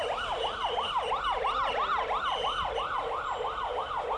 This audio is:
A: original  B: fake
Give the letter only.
A